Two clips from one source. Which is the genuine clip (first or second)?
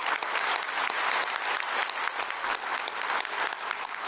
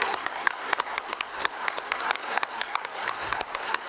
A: first